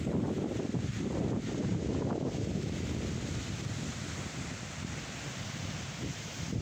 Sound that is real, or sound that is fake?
real